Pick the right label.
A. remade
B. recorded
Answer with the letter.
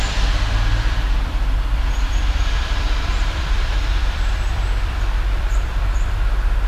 A